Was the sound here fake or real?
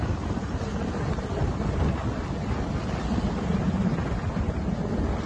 real